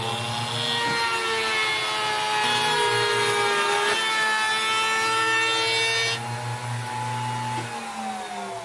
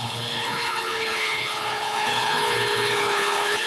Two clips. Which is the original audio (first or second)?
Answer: first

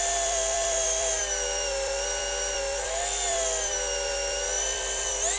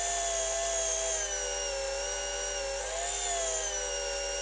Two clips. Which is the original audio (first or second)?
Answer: second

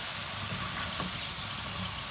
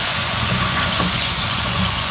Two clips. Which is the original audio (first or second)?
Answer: first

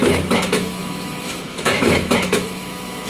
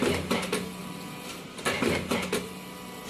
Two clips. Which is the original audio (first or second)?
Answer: second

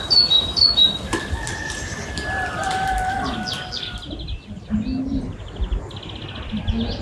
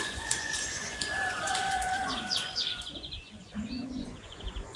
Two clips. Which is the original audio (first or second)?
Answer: first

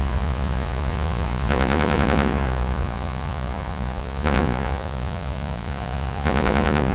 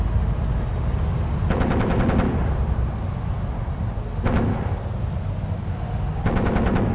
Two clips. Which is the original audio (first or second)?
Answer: second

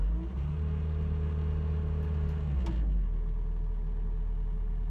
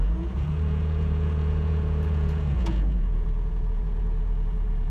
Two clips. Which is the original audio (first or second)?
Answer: first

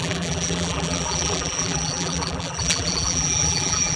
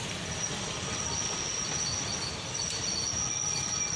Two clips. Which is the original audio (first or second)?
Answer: second